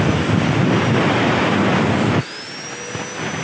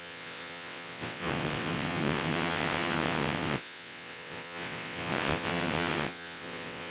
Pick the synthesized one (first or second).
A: second